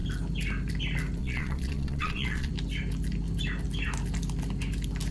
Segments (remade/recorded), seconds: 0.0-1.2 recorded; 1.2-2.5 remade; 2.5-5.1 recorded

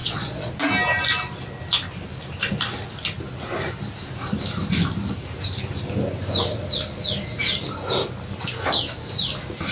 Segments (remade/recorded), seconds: 0.0-0.5 remade; 0.5-9.7 recorded

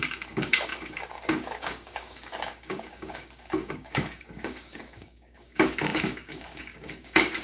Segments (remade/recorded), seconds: 0.0-7.4 remade

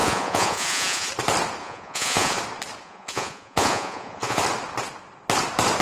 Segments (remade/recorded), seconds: 0.0-1.1 remade; 1.1-1.6 recorded; 1.6-2.4 remade; 2.4-2.8 recorded; 2.8-4.4 remade; 4.4-5.8 recorded

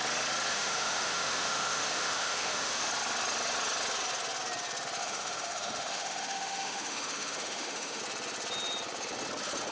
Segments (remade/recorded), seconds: 0.0-0.5 recorded; 0.5-2.9 remade; 2.9-5.0 recorded; 5.0-8.0 remade; 8.0-9.7 recorded